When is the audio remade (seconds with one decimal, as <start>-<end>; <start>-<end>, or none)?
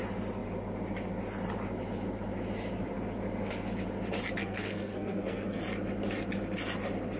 4.4-5.6